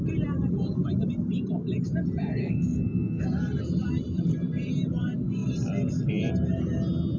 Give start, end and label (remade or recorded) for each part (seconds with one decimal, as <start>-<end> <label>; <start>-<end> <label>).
0.0-2.4 recorded; 2.4-3.2 remade; 3.2-7.2 recorded